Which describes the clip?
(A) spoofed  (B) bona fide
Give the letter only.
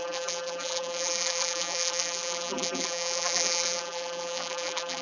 A